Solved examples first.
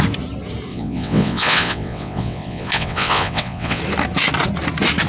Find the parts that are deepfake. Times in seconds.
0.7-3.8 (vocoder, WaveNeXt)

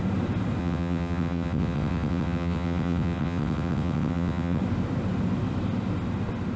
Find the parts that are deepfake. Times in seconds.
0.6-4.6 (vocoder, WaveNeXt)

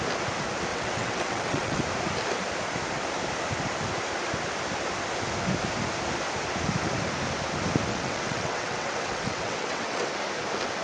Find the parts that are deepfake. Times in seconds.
0.7-1.8 (vocoder, WaveNeXt); 7.9-10.1